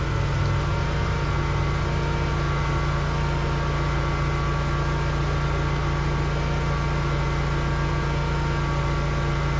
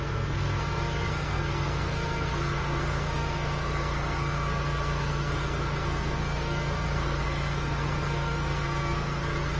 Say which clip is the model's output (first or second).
second